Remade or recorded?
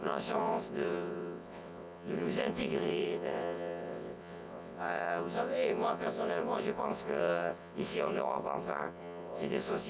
remade